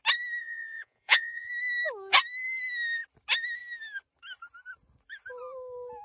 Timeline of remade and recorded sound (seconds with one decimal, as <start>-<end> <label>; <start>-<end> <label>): 0.0-0.4 recorded; 0.4-1.5 remade; 1.5-6.0 recorded